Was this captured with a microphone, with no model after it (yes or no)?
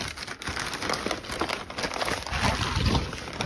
yes